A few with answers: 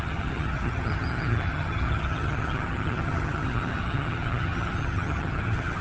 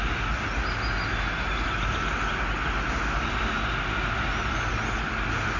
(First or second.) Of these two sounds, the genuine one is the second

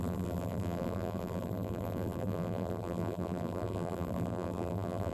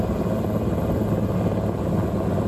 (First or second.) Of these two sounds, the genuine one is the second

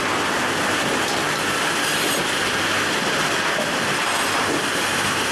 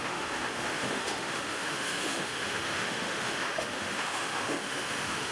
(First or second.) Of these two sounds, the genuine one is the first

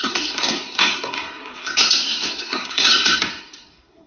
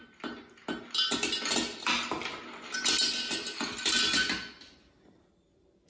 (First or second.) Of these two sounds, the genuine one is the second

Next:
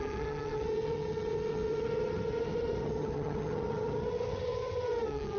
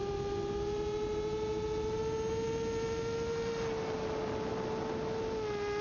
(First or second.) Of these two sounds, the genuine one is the second